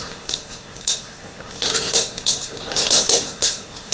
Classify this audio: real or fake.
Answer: fake